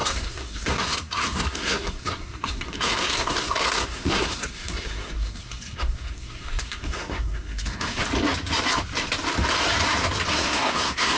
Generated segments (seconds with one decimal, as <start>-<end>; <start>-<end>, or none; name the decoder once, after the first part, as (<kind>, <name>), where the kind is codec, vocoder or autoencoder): 0.0-8.0 (codec, SNAC); 10.3-11.2